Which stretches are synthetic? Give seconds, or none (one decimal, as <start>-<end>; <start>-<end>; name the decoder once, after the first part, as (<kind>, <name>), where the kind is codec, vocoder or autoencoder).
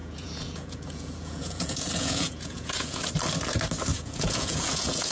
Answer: 0.0-3.1 (vocoder, Vocos); 3.9-5.1